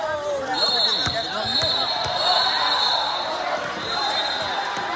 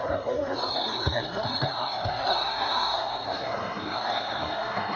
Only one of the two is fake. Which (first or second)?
second